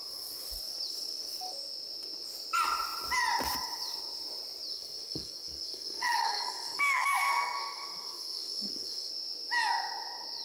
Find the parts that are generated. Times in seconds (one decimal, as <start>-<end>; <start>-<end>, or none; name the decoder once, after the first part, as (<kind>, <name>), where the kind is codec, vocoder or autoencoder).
4.7-9.1 (codec, SNAC)